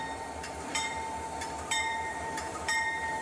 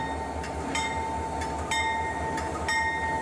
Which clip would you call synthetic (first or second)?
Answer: first